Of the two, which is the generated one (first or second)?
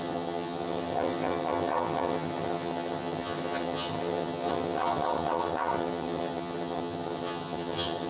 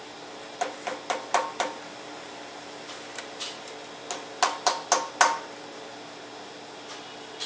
first